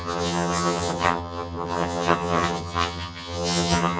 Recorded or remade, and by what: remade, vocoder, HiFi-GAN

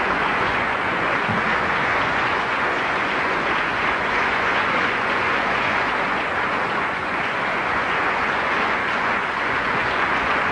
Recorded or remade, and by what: remade, vocoder, Vocos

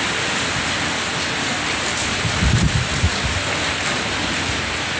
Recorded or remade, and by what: recorded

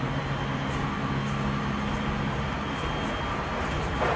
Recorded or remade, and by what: recorded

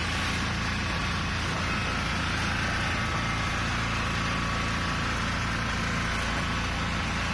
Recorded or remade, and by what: recorded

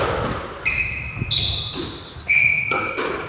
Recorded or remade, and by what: recorded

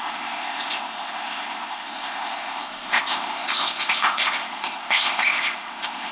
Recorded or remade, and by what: remade, codec, ZipCodec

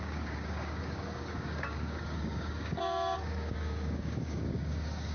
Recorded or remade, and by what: remade, codec, DAC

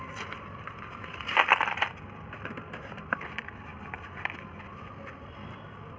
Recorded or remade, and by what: recorded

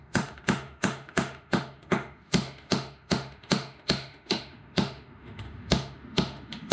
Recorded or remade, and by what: remade, autoencoder, DAC-VAE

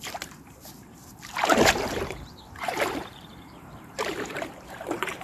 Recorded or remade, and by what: remade, vocoder, BigVGAN v2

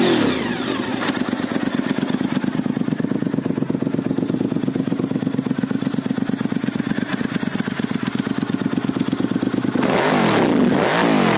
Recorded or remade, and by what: recorded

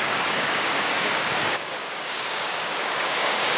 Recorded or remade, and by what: remade, codec, DAC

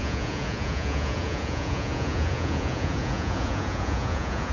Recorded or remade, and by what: remade, vocoder, Vocos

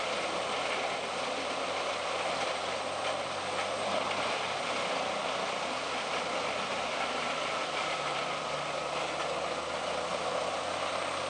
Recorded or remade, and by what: remade, vocoder, BigVGAN v2